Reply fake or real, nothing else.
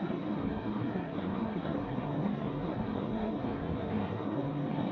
fake